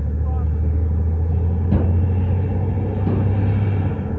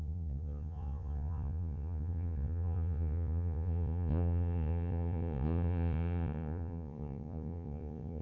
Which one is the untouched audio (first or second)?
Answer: first